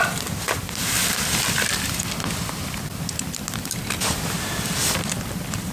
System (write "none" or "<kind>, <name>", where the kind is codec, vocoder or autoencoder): vocoder, BigVGAN v2